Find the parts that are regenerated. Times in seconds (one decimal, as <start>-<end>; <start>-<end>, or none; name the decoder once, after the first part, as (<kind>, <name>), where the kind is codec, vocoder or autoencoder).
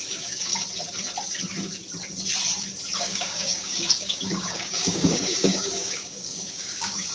0.0-0.5 (codec, DAC); 3.0-7.1